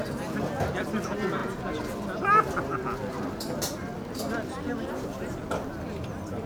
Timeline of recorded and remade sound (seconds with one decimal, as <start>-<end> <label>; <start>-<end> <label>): 0.0-6.5 recorded